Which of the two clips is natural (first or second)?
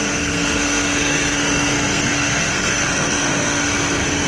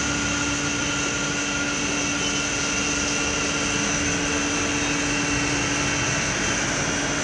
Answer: second